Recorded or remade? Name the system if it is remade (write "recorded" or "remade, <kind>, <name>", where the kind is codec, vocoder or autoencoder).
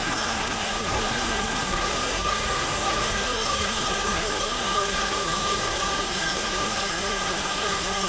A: remade, codec, SNAC